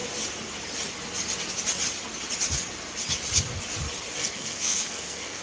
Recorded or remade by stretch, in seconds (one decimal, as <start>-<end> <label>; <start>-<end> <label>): 0.0-4.2 recorded; 4.2-5.4 remade